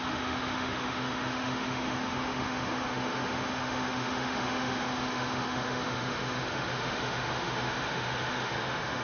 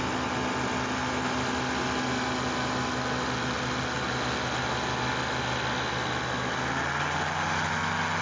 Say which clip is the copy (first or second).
first